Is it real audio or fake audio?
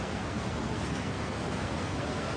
fake